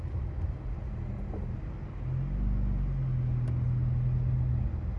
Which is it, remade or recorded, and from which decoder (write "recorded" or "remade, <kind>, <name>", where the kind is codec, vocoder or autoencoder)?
recorded